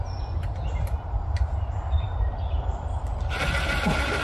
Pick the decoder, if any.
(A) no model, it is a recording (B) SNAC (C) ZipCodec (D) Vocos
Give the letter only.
A